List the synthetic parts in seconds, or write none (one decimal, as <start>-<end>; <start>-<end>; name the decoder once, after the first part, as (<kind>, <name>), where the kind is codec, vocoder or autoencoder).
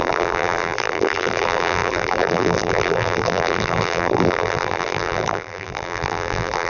0.0-6.7 (vocoder, BigVGAN v2)